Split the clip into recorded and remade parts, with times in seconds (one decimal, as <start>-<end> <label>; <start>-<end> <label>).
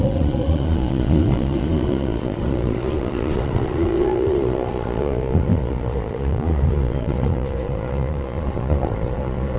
0.0-9.6 remade